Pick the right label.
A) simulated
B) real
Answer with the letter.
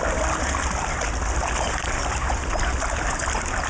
B